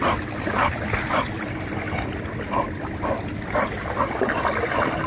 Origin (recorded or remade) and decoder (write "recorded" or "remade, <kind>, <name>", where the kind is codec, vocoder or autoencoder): remade, vocoder, BigVGAN v2